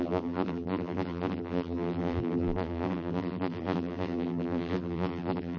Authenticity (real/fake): fake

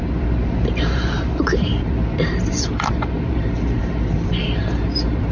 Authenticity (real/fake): fake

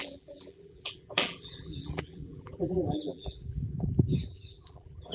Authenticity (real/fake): fake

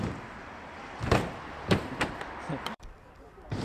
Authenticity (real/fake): fake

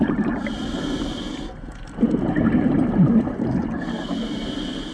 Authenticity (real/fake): real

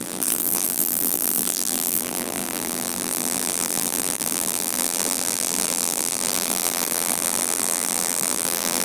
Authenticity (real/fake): fake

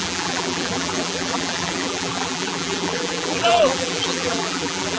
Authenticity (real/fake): fake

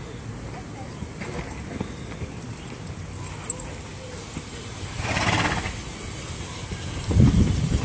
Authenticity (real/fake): real